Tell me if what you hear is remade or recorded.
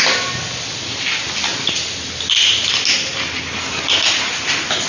recorded